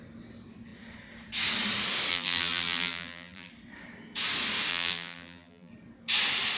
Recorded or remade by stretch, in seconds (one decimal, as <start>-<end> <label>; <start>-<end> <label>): 0.0-2.1 recorded; 2.1-3.5 remade; 3.5-4.7 recorded; 4.7-5.7 remade; 5.7-6.6 recorded